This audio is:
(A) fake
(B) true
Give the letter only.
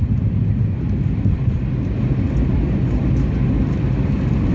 B